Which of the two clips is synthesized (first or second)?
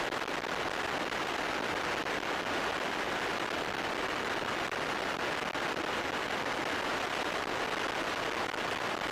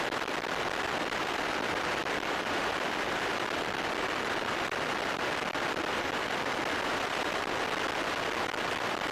second